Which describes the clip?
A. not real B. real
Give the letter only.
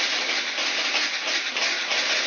B